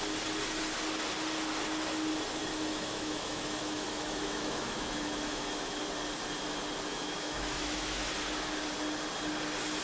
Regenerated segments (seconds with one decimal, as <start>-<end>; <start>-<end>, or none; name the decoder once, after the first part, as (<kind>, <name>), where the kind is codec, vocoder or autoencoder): 2.4-5.8 (autoencoder, DAC-VAE); 6.9-8.1